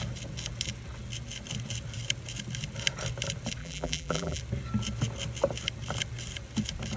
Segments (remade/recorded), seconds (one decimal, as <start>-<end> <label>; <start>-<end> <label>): 0.0-3.6 recorded; 3.6-4.4 remade; 4.4-7.0 recorded

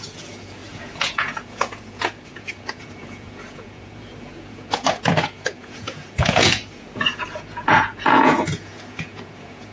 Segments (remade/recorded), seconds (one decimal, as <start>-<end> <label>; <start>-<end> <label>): 0.0-9.7 remade

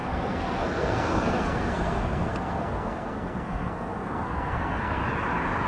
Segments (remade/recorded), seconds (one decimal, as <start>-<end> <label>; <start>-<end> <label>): 0.0-5.0 remade; 5.0-5.7 recorded

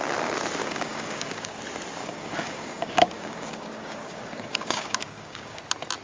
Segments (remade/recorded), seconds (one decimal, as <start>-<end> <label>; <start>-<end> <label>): 0.0-0.6 recorded; 0.6-1.6 remade; 1.6-2.0 recorded; 2.0-5.6 remade; 5.6-6.0 recorded

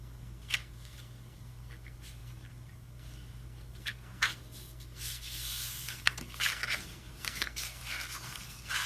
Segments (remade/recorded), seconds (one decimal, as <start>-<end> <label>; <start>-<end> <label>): 0.0-8.9 remade

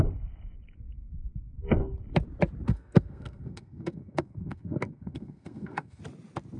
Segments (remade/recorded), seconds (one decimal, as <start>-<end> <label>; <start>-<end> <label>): 0.0-2.7 recorded; 2.7-6.0 remade; 6.0-6.6 recorded

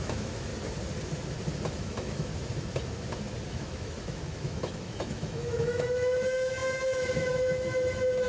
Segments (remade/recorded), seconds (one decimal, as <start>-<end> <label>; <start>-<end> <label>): 0.0-0.5 remade; 0.5-1.7 recorded; 1.7-2.3 remade; 2.3-3.5 recorded; 3.5-8.3 remade